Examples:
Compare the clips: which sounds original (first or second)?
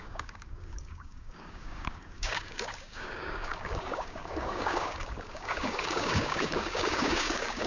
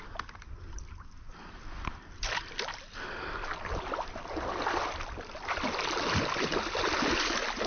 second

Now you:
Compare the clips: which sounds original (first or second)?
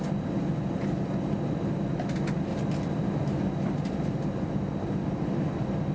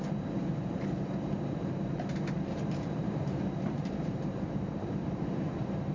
first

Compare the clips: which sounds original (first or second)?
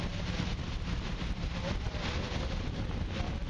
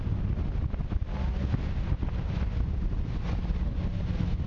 second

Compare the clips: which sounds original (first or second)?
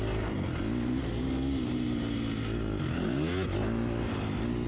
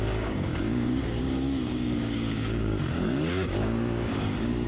first